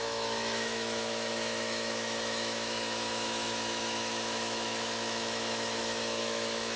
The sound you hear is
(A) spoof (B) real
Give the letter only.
A